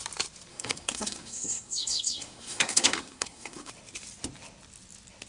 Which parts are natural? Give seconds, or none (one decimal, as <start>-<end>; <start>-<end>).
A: 0.0-0.5; 3.7-5.3